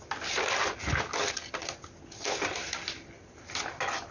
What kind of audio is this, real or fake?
real